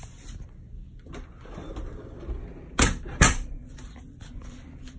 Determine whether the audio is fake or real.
real